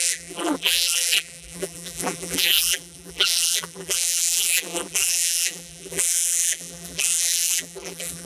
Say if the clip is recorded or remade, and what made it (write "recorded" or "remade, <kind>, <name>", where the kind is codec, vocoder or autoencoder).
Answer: remade, vocoder, BigVGAN v2